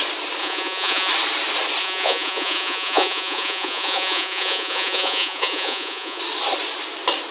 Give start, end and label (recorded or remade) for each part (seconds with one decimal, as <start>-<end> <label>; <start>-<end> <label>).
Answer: 0.0-0.4 recorded; 0.4-1.1 remade; 1.1-1.8 recorded; 1.8-6.2 remade; 6.2-7.3 recorded

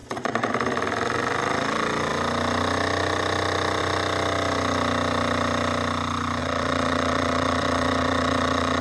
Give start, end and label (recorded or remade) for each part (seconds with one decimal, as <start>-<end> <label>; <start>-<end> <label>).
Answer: 0.0-0.5 remade; 0.5-6.4 recorded; 6.4-8.8 remade